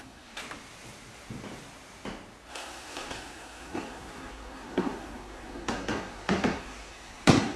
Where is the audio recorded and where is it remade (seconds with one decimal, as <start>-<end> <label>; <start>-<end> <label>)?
0.0-0.4 remade; 0.4-2.5 recorded; 2.5-7.6 remade